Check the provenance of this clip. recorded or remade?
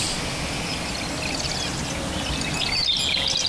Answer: recorded